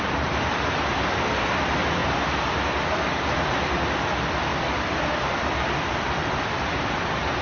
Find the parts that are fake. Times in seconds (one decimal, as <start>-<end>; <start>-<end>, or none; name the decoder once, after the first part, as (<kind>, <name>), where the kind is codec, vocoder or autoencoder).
0.0-7.4 (vocoder, BigVGAN v2)